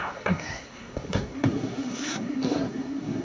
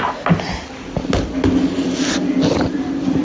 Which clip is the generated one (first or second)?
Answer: first